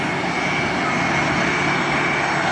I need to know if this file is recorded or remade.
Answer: recorded